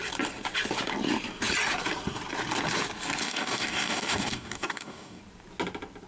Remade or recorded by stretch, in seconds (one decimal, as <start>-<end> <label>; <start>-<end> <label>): 0.0-3.2 recorded; 3.2-5.2 remade; 5.2-6.1 recorded